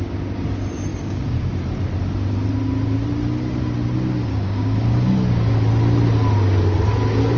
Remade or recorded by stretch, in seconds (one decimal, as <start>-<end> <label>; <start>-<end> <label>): 0.0-0.9 recorded; 0.9-1.5 remade; 1.5-4.3 recorded; 4.3-5.1 remade; 5.1-7.4 recorded